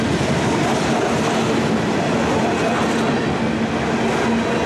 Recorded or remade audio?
recorded